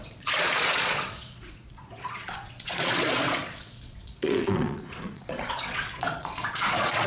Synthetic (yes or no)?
yes